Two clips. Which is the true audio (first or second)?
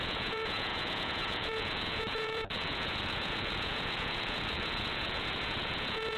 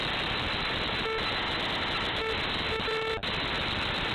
second